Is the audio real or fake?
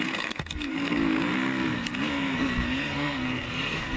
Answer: fake